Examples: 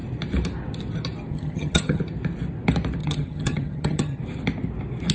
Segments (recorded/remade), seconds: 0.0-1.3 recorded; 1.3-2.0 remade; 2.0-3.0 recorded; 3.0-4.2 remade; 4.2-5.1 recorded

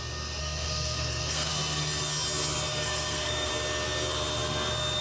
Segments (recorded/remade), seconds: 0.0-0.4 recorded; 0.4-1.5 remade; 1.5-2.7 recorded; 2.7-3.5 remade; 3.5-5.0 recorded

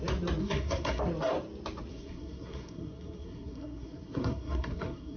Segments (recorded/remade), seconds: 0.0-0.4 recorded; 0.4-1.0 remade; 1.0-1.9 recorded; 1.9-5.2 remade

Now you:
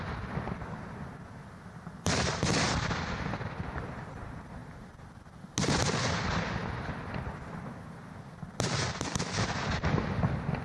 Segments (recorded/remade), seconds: 0.0-4.6 recorded; 4.6-5.2 remade; 5.2-10.6 recorded